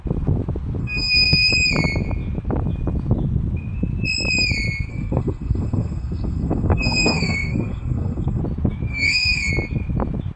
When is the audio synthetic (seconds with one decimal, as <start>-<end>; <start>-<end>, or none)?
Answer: 0.8-1.5; 4.9-8.4; 8.9-9.5